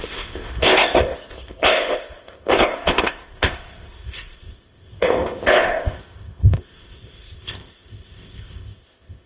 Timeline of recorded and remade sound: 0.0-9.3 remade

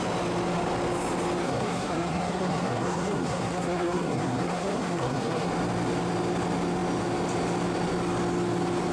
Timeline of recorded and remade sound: 0.0-1.4 recorded; 1.4-5.5 remade; 5.5-8.9 recorded

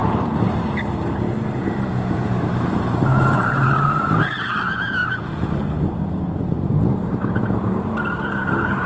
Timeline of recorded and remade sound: 0.0-4.5 remade; 4.5-5.0 recorded; 5.0-7.3 remade; 7.3-8.9 recorded

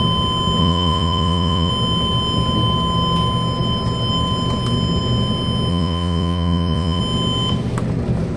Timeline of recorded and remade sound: 0.0-0.6 recorded; 0.6-1.7 remade; 1.7-5.7 recorded; 5.7-7.0 remade; 7.0-8.4 recorded

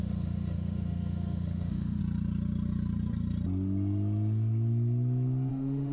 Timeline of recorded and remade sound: 0.0-2.0 remade; 2.0-5.5 recorded; 5.5-5.9 remade